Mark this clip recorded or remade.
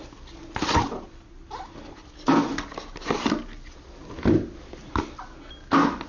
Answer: recorded